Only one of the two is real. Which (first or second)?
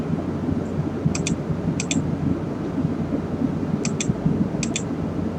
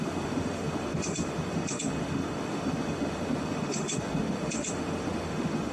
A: first